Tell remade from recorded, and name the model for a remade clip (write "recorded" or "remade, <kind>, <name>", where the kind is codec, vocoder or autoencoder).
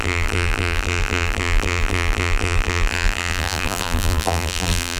remade, vocoder, BigVGAN v2